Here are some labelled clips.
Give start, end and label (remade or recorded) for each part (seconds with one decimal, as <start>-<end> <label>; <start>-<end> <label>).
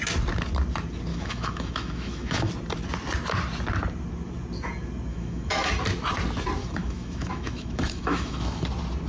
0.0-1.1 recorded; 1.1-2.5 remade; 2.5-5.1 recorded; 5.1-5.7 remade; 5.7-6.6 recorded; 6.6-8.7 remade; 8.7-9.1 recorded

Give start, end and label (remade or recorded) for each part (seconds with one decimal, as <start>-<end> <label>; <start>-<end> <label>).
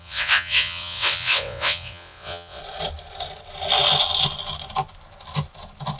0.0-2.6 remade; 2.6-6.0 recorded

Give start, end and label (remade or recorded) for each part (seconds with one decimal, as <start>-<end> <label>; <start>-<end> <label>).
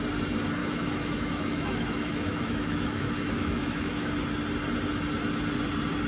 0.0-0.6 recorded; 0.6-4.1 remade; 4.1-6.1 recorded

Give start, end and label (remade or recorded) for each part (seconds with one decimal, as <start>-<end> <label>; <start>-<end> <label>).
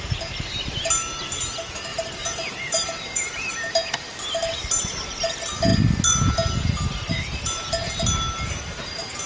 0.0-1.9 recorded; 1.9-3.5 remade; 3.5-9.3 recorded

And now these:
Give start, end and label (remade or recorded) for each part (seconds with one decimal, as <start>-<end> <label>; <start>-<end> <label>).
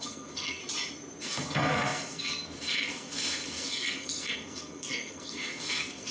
0.0-0.6 remade; 0.6-1.2 recorded; 1.2-6.1 remade